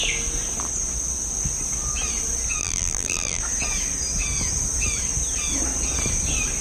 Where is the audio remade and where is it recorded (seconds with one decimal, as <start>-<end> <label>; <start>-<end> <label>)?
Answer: 0.0-2.6 recorded; 2.6-3.4 remade; 3.4-6.6 recorded